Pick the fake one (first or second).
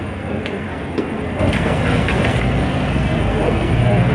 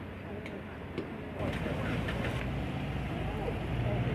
first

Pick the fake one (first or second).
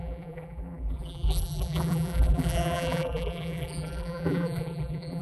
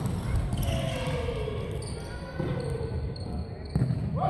first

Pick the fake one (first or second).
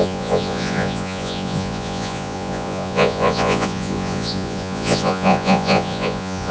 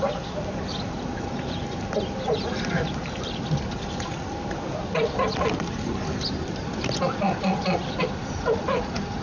first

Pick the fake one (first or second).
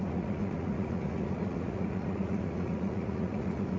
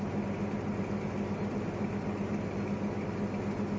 first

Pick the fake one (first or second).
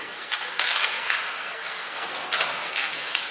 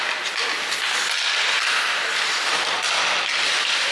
first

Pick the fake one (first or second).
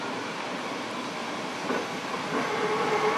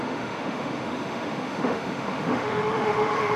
second